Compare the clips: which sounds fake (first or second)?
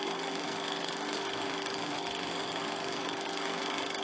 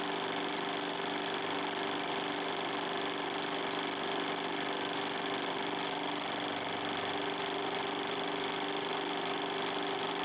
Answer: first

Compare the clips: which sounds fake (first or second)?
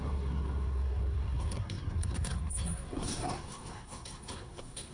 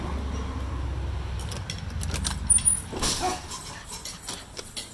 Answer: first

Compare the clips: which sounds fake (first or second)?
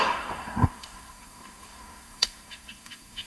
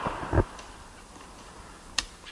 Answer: first